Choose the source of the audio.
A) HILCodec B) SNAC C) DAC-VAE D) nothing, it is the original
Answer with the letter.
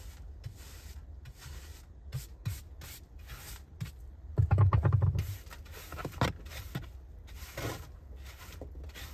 D